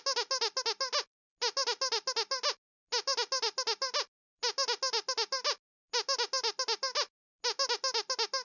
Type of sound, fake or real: real